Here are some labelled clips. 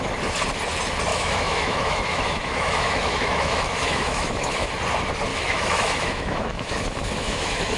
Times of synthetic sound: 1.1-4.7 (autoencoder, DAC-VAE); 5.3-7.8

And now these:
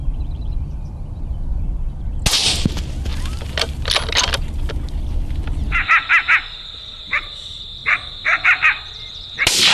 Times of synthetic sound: none

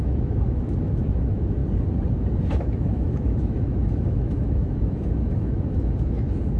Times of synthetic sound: 0.0-1.6 (autoencoder, DAC-VAE); 2.4-6.6

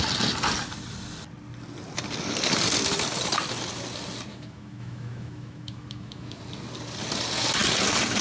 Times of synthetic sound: 4.3-6.4 (autoencoder, DAC-VAE)